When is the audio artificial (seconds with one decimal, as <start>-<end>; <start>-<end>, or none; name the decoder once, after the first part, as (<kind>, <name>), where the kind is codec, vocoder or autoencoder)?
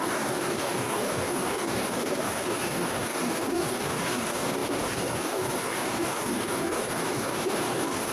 0.0-8.1 (codec, DAC)